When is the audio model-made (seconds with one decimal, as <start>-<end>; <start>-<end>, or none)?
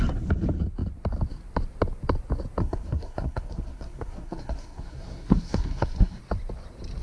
2.6-6.2